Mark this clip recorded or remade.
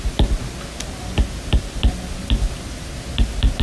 recorded